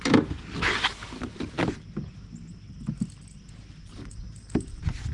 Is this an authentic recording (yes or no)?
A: yes